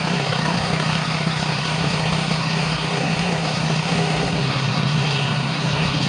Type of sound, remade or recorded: remade